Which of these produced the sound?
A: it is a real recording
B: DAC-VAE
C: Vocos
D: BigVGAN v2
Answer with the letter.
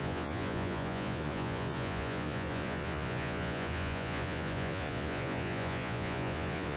C